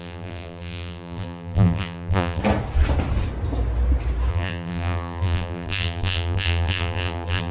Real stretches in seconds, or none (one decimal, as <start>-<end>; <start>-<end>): 2.4-4.3